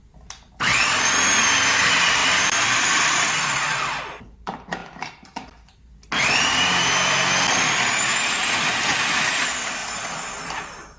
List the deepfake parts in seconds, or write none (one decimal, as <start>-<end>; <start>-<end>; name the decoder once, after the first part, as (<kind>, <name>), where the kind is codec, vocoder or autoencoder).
2.2-4.0 (vocoder, BigVGAN v2); 4.8-5.9; 9.8-10.6